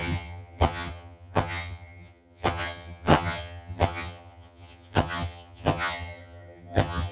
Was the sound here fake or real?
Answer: fake